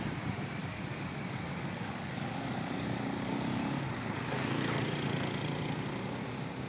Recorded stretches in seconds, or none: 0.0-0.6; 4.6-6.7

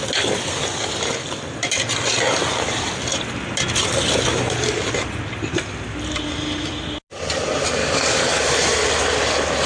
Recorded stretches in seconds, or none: 0.0-7.8; 8.4-9.7

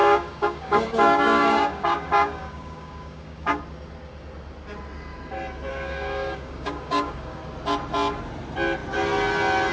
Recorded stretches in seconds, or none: 3.6-5.7; 7.4-9.7

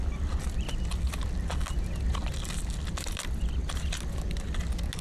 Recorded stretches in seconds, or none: 0.0-5.0

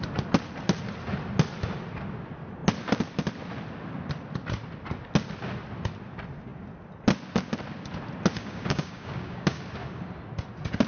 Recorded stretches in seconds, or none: 0.0-8.4; 9.6-10.9

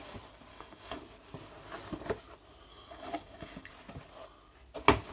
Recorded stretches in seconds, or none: 0.0-0.5; 1.0-2.7; 3.7-5.1

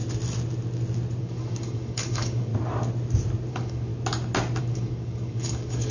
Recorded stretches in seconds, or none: 0.0-1.2; 2.5-3.5; 3.9-4.6

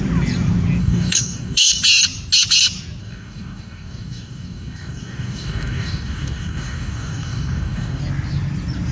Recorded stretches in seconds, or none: 0.0-0.8; 1.8-3.0; 8.0-8.9